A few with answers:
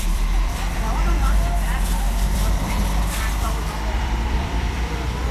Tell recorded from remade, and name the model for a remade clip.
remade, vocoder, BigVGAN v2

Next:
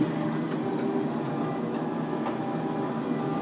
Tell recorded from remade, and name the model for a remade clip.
recorded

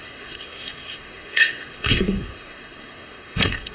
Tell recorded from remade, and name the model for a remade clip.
remade, codec, SNAC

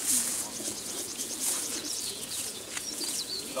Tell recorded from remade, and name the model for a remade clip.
remade, vocoder, Vocos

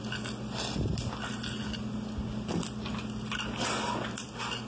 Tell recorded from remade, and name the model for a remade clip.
recorded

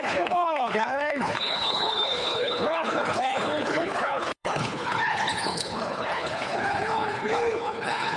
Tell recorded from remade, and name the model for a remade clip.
remade, codec, HILCodec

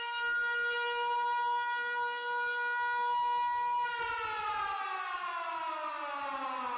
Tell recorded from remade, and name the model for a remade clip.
recorded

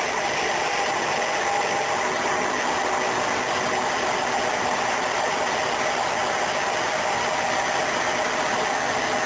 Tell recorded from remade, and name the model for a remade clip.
recorded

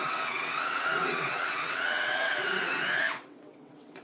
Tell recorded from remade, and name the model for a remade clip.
remade, vocoder, WaveNeXt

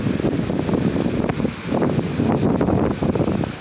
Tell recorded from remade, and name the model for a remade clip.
recorded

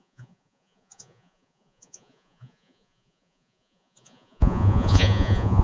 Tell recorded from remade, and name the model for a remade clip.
remade, vocoder, Vocos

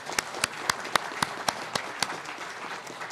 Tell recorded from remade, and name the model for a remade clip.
recorded